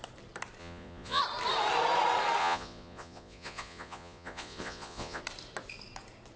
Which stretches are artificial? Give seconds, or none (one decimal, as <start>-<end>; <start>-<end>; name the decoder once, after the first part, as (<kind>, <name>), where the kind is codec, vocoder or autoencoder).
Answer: 0.6-1.2 (vocoder, Vocos); 2.4-5.2